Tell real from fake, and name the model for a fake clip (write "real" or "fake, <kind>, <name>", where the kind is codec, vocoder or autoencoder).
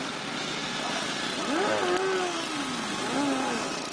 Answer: real